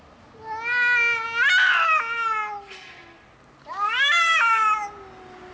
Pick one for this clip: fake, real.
real